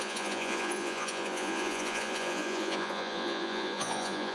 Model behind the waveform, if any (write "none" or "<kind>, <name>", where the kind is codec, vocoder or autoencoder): vocoder, Vocos